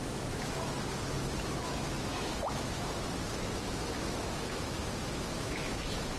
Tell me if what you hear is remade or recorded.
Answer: remade